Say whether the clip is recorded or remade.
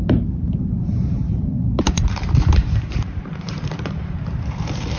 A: remade